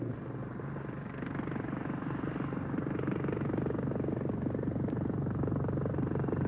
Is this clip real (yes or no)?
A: yes